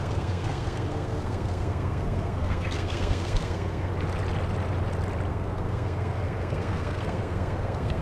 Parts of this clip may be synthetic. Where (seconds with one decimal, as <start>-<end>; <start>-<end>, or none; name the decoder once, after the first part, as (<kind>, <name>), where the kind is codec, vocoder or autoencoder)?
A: 0.0-3.9 (codec, SNAC); 5.3-8.0